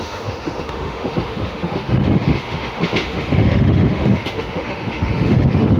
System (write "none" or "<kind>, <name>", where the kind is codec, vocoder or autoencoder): autoencoder, DAC-VAE